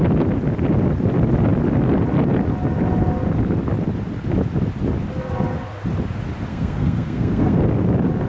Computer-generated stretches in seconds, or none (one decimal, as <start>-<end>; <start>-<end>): 6.5-7.6